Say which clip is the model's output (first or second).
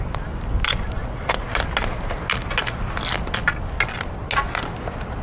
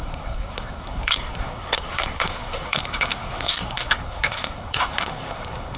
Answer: second